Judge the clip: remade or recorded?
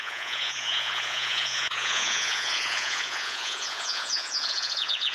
remade